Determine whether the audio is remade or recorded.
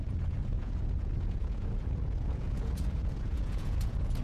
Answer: remade